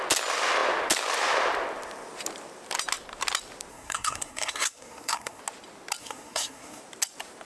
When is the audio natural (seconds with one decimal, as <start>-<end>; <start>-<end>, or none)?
0.0-3.7; 5.4-6.0; 6.8-7.4